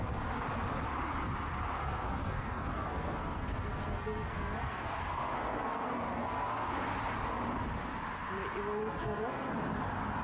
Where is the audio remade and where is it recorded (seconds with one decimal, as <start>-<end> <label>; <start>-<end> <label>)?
0.0-1.8 recorded; 1.8-6.7 remade; 6.7-8.8 recorded; 8.8-9.5 remade; 9.5-10.2 recorded